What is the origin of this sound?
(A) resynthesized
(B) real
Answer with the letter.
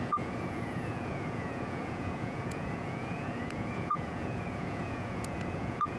A